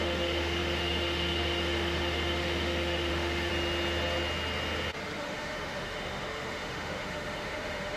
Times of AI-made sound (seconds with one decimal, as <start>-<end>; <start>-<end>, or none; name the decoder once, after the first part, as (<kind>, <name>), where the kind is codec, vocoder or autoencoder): 0.0-3.5 (autoencoder, DAC-VAE); 5.2-8.0